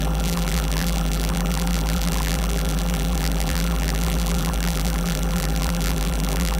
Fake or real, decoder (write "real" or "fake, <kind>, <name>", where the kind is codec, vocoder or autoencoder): fake, vocoder, BigVGAN v2